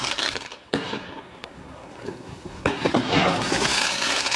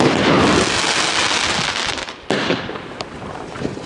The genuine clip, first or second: second